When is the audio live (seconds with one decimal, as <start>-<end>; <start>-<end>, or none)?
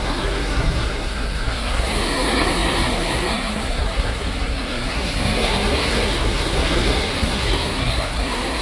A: none